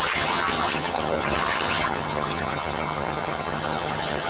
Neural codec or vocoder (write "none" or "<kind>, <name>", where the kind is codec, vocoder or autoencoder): vocoder, HiFi-GAN